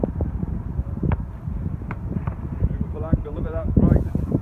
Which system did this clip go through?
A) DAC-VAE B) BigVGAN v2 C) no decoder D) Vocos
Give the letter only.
B